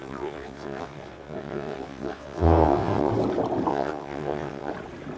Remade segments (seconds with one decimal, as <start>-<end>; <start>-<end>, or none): 0.0-3.1; 3.7-4.7